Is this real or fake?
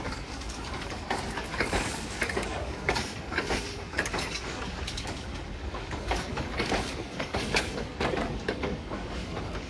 fake